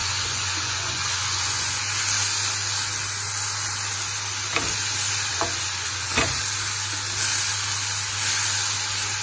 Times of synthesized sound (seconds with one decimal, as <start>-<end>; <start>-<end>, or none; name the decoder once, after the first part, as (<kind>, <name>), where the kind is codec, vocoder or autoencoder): 0.0-1.8 (vocoder, Vocos); 5.3-6.4

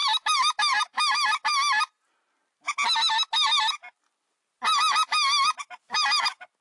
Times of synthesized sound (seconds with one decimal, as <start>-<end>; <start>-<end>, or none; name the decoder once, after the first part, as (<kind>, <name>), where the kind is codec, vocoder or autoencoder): none

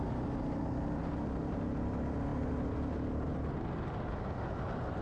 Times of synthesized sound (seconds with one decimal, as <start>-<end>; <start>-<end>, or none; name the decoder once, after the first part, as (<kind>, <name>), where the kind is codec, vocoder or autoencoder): none

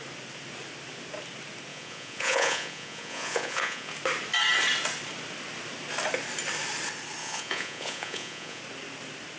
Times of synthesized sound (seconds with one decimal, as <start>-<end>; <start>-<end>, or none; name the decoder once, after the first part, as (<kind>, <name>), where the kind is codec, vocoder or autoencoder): 1.7-3.9 (vocoder, Vocos); 7.2-8.6